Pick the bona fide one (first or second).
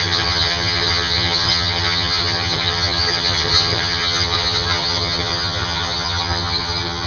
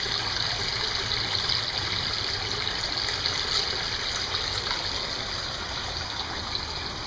second